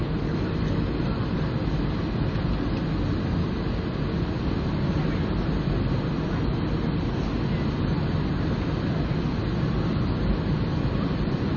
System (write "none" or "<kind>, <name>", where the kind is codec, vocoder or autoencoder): none